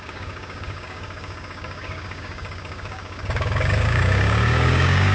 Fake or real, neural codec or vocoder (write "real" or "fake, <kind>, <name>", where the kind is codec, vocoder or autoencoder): fake, codec, DAC